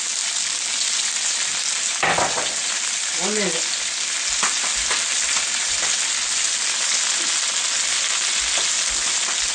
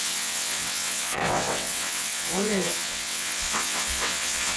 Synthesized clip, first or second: second